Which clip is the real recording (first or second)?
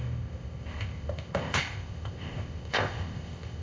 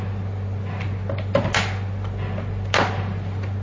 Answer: second